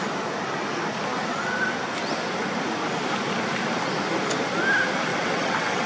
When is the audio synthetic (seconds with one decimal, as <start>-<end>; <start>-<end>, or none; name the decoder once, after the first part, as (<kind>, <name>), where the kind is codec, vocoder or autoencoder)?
5.1-5.9 (vocoder, WaveNeXt)